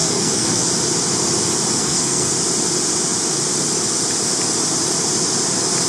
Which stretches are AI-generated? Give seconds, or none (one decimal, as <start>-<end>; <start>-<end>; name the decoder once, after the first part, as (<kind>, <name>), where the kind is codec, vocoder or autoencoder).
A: 0.0-0.7 (codec, SNAC); 1.8-2.3